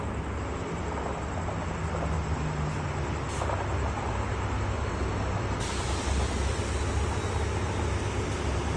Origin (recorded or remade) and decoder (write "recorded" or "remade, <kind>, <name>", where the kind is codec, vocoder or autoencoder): recorded